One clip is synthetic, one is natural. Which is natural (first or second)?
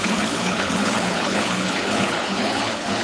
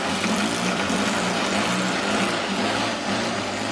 second